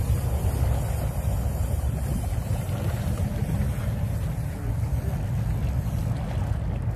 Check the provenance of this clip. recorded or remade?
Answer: recorded